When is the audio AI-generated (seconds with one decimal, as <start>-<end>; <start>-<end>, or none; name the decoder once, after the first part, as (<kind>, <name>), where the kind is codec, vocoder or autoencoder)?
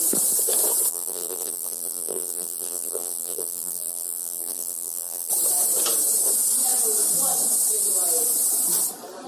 0.9-5.3 (vocoder, BigVGAN v2)